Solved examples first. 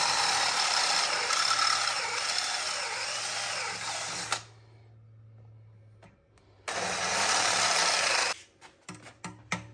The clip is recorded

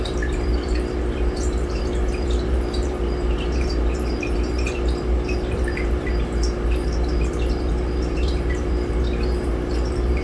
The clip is remade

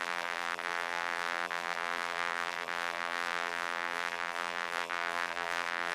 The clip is remade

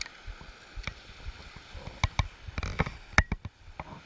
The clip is remade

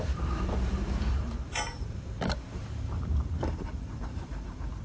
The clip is remade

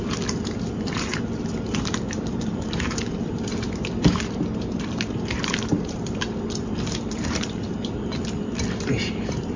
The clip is remade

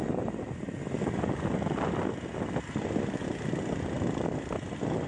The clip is recorded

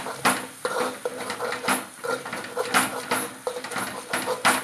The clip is recorded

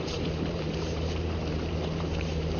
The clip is remade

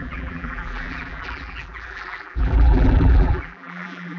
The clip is remade